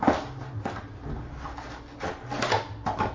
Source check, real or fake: real